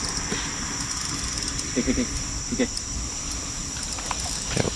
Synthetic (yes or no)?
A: no